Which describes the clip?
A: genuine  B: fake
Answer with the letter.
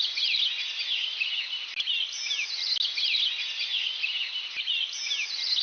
A